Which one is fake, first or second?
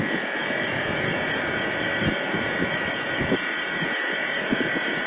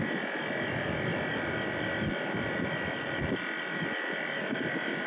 first